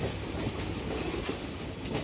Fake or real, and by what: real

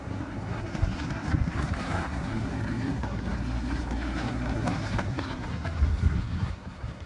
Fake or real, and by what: fake, codec, SNAC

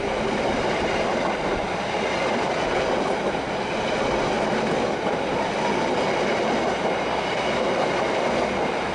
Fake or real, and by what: real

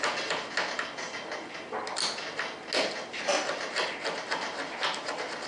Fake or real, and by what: real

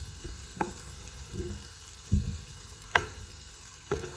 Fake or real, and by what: fake, codec, SNAC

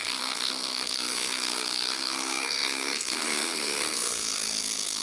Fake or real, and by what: fake, codec, SNAC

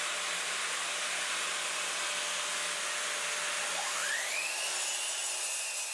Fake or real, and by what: real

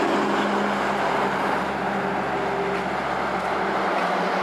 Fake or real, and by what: real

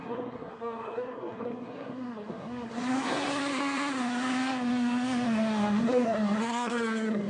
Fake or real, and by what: fake, codec, SNAC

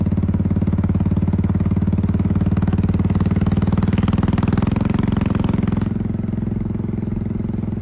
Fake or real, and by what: real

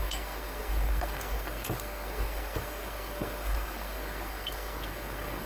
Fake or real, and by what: fake, codec, SNAC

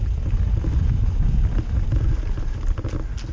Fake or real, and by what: real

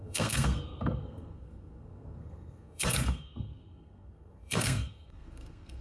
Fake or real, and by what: fake, codec, SNAC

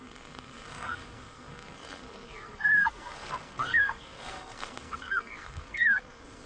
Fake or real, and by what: fake, codec, SNAC